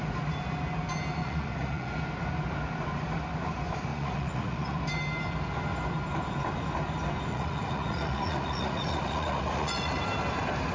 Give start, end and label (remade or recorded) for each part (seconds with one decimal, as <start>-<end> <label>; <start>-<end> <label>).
0.0-1.2 recorded; 1.2-1.9 remade; 1.9-3.9 recorded; 3.9-4.8 remade; 4.8-7.3 recorded; 7.3-10.0 remade; 10.0-10.7 recorded